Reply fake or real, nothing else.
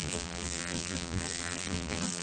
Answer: fake